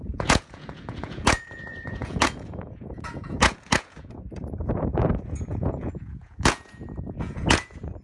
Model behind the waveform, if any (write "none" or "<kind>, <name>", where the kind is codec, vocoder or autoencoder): vocoder, Vocos